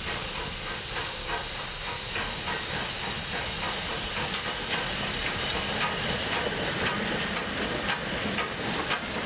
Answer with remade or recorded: recorded